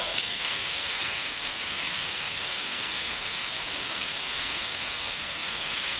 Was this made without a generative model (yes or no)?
no